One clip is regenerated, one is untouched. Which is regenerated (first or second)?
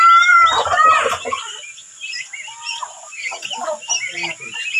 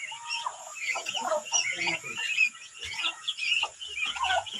second